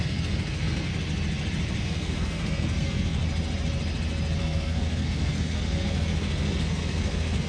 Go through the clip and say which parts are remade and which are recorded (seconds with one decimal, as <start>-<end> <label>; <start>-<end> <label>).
0.0-0.9 remade; 0.9-1.8 recorded; 1.8-3.2 remade; 3.2-4.4 recorded; 4.4-7.5 remade